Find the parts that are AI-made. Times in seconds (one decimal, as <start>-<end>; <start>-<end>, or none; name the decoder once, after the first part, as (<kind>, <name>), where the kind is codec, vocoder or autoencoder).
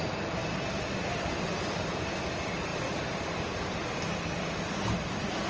none